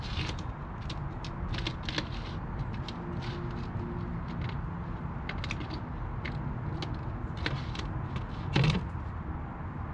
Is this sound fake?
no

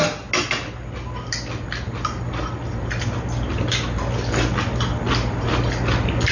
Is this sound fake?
no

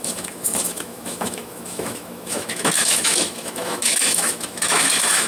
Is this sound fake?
yes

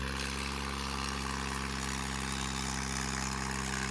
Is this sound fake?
no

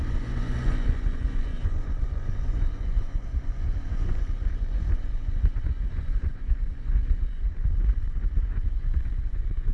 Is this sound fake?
yes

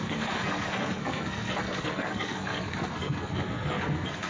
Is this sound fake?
yes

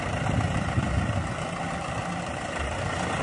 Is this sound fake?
no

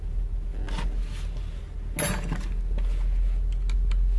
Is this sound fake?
no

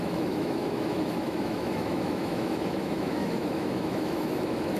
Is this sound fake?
yes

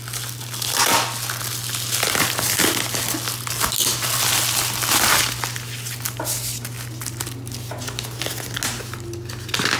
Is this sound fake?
no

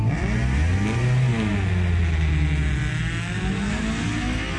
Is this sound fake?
no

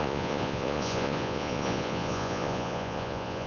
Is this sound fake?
yes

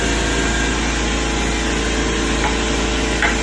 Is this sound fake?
no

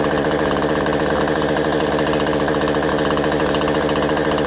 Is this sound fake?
no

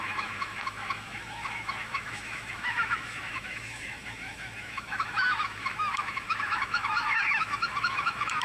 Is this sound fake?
yes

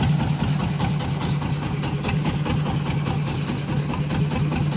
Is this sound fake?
no